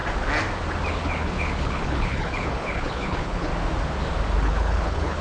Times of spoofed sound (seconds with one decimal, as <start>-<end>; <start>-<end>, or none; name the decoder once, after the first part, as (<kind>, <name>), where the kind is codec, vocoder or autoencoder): 0.9-3.5 (codec, HILCodec); 4.4-5.2

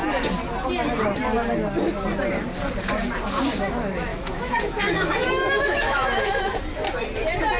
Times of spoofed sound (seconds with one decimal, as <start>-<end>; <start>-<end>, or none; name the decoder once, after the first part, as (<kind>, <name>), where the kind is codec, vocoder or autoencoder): 4.1-6.6 (autoencoder, DAC-VAE)